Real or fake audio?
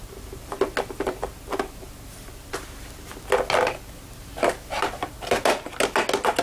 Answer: real